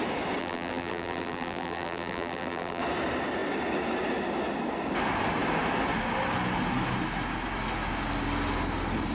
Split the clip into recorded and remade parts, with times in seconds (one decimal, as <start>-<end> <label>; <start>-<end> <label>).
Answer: 0.0-0.4 recorded; 0.4-2.8 remade; 2.8-9.1 recorded